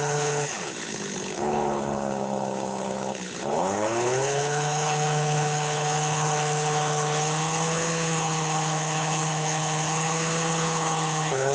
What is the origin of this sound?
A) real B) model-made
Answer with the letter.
B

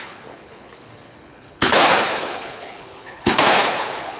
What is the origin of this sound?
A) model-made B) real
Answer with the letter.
A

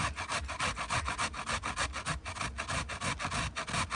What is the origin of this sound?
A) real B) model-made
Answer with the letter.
A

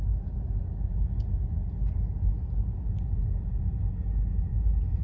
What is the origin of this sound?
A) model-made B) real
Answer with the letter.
B